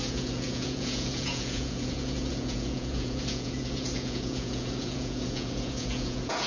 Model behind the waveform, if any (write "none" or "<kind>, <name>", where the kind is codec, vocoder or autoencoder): vocoder, Vocos